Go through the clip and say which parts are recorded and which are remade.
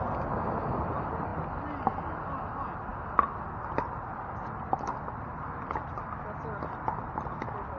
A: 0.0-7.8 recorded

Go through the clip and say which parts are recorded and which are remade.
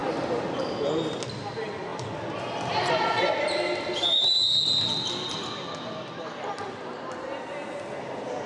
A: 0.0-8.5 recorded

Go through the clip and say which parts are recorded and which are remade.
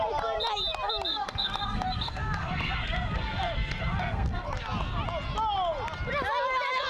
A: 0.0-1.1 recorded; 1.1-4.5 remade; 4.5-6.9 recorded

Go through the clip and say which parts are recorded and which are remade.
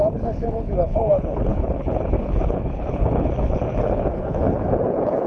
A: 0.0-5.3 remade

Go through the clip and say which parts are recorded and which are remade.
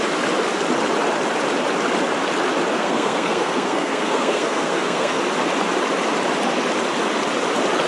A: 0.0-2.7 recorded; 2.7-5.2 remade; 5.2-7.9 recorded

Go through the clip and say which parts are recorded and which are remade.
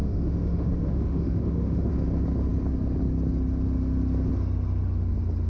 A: 0.0-1.9 remade; 1.9-5.5 recorded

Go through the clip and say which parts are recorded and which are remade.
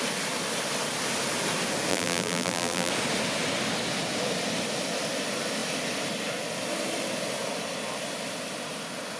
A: 0.0-1.9 recorded; 1.9-2.9 remade; 2.9-9.2 recorded